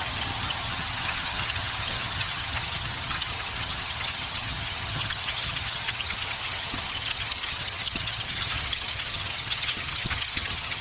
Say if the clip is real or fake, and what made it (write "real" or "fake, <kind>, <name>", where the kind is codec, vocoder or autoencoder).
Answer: fake, vocoder, HiFi-GAN